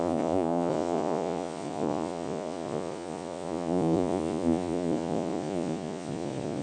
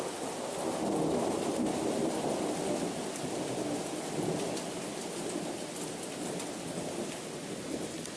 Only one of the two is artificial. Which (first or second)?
first